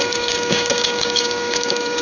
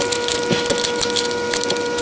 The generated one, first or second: first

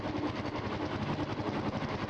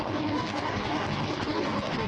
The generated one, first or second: second